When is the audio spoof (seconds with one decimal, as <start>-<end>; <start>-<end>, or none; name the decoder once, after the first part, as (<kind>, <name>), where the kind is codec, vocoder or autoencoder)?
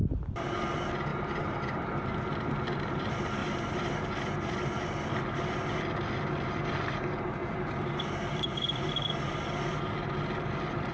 0.0-0.6 (vocoder, BigVGAN v2); 1.1-1.7; 7.4-9.2